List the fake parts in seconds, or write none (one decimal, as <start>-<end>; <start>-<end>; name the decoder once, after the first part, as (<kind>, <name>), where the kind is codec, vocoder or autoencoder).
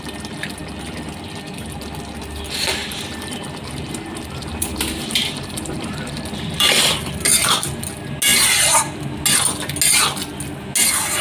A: 2.8-6.2 (vocoder, BigVGAN v2)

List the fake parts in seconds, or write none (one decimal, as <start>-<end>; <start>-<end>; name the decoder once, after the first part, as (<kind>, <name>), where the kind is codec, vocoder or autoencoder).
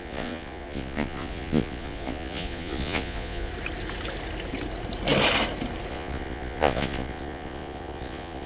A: 0.0-3.5 (vocoder, Vocos); 5.9-8.5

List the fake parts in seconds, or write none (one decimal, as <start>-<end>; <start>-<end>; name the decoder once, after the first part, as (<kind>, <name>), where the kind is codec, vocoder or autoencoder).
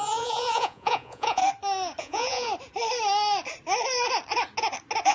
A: 0.0-1.4 (vocoder, Vocos); 2.0-2.5